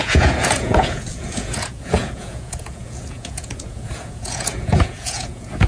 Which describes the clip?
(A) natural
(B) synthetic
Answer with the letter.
B